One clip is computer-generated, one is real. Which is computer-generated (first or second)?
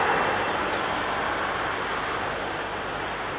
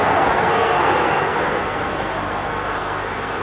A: second